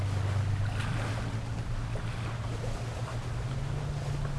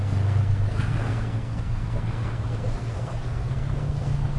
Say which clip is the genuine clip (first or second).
first